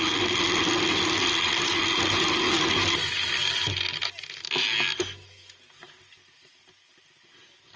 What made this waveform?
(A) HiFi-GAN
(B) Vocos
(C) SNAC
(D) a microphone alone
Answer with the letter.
D